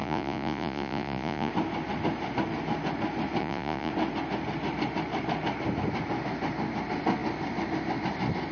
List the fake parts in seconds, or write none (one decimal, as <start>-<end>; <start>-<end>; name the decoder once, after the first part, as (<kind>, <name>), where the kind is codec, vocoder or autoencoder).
0.0-1.5 (vocoder, Vocos); 3.4-3.9